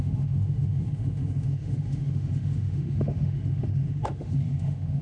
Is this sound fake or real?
fake